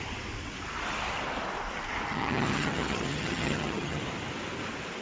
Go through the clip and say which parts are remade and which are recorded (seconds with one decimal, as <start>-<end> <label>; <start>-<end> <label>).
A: 0.0-2.1 recorded; 2.1-4.0 remade; 4.0-5.0 recorded

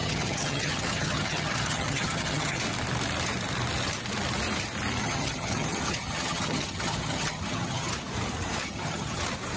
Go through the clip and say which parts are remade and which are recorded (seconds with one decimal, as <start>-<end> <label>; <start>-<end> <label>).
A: 0.0-2.6 remade; 2.6-5.0 recorded; 5.0-7.9 remade; 7.9-8.6 recorded; 8.6-9.2 remade; 9.2-9.6 recorded

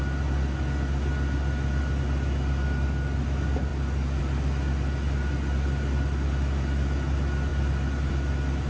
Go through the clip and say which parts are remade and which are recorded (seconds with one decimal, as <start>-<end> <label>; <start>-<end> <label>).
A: 0.0-8.7 recorded

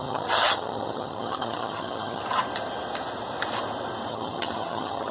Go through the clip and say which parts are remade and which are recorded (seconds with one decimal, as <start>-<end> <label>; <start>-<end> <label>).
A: 0.0-2.2 remade; 2.2-4.1 recorded; 4.1-5.1 remade

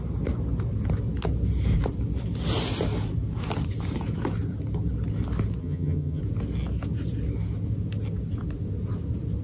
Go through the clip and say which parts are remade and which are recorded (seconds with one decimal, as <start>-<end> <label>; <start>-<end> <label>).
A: 0.0-5.6 recorded; 5.6-6.2 remade; 6.2-9.4 recorded

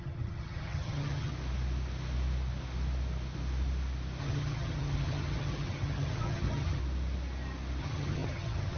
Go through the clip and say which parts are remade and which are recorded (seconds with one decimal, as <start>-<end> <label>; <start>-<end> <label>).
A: 0.0-1.3 remade; 1.3-4.2 recorded; 4.2-6.8 remade; 6.8-7.8 recorded; 7.8-8.8 remade

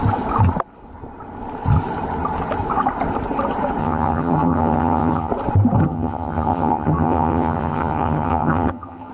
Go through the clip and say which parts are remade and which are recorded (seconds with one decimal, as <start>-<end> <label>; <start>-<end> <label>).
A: 0.0-3.8 recorded; 3.8-5.3 remade; 5.3-5.8 recorded; 5.8-9.1 remade